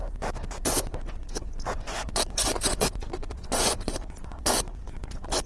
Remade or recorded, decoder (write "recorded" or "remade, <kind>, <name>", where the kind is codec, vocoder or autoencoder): remade, vocoder, Vocos